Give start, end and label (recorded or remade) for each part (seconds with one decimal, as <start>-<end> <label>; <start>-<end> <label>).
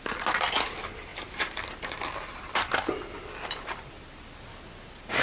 0.0-1.1 recorded; 1.1-4.2 remade; 4.2-5.2 recorded